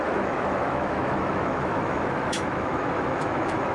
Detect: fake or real fake